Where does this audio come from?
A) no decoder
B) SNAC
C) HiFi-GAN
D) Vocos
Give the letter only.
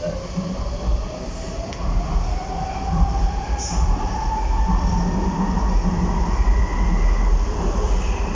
A